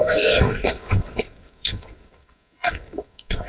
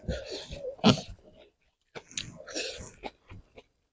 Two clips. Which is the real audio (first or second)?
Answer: second